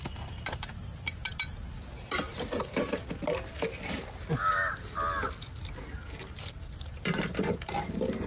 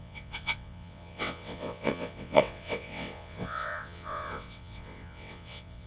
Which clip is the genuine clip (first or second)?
first